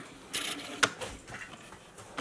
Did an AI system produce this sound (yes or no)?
no